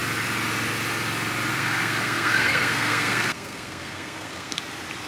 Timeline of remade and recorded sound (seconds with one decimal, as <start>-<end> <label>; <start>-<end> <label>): 0.0-1.5 recorded; 1.5-4.6 remade; 4.6-5.1 recorded